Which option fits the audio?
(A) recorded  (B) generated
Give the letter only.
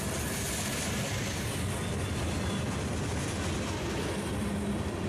A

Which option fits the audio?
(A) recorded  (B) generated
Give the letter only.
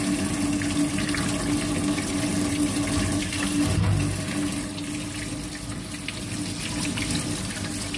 A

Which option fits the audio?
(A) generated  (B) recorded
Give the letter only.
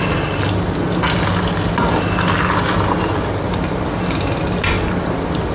B